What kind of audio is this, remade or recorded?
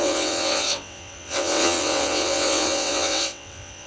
remade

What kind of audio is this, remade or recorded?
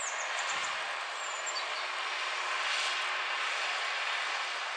recorded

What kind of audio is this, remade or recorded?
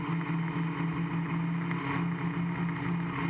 recorded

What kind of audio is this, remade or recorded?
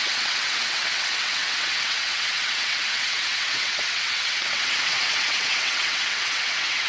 remade